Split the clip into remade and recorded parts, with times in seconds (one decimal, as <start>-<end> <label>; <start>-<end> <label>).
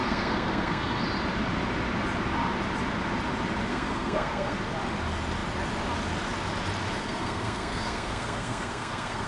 0.0-1.0 remade; 1.0-3.7 recorded; 3.7-4.6 remade; 4.6-7.0 recorded; 7.0-9.3 remade